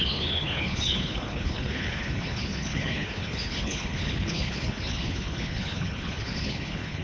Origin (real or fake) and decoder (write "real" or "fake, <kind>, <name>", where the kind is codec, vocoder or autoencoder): fake, codec, HILCodec